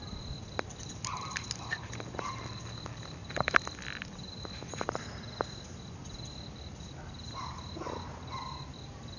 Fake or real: real